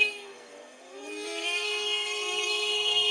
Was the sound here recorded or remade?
remade